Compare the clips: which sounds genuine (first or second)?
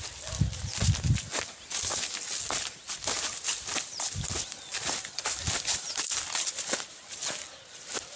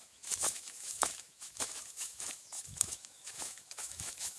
first